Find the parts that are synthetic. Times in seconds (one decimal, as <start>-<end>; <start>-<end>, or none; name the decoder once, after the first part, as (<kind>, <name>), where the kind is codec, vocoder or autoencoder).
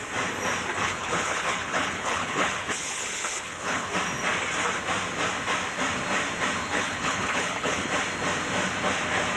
0.8-3.9 (codec, HILCodec); 6.6-7.9